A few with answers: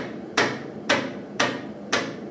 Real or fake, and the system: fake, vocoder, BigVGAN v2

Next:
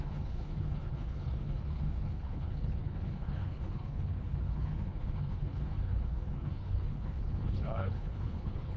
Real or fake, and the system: fake, codec, HILCodec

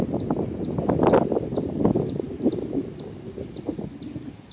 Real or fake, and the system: real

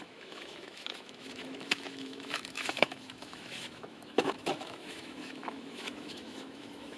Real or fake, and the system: fake, autoencoder, DAC-VAE